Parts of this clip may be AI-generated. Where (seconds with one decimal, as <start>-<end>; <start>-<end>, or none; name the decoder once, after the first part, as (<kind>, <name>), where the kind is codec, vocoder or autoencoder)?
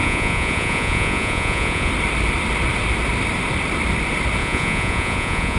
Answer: 0.0-1.9 (vocoder, Vocos); 4.4-5.6